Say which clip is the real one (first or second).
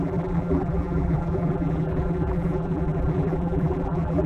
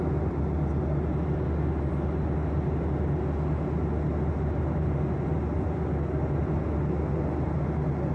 second